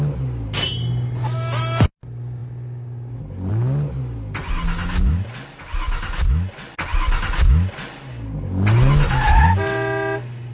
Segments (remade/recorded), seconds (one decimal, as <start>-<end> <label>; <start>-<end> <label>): 0.0-10.5 recorded